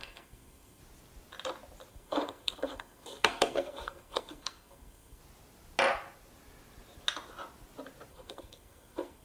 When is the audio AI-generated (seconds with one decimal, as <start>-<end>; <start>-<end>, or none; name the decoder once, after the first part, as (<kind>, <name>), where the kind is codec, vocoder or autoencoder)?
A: 0.0-0.8 (codec, SNAC); 1.9-5.2; 8.1-9.2